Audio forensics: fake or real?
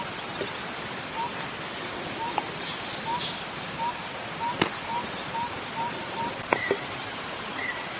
real